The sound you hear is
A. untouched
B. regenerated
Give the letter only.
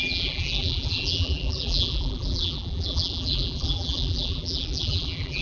B